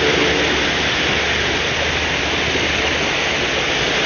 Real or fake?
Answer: real